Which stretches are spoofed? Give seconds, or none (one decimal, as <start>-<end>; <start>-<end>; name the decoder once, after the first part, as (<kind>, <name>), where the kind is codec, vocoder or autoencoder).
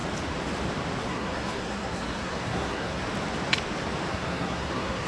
1.1-3.0 (codec, SNAC); 4.1-5.1